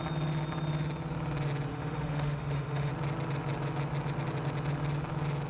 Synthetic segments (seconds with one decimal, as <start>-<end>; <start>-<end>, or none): 1.7-2.9